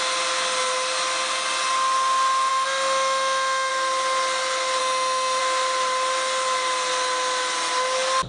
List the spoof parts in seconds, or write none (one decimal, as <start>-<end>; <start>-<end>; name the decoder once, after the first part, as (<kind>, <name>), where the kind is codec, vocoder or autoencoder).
2.5-3.7 (autoencoder, DAC-VAE); 4.8-5.4